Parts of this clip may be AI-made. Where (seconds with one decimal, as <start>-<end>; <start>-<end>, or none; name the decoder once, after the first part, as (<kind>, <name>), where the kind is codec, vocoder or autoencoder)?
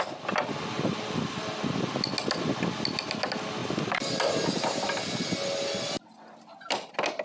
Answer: none